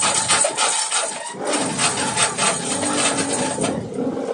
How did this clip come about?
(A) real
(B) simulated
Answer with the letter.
A